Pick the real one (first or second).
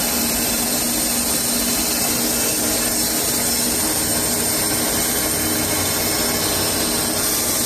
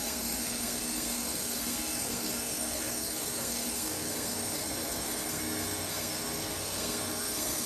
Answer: first